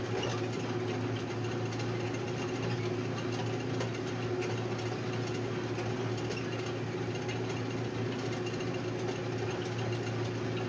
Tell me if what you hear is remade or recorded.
recorded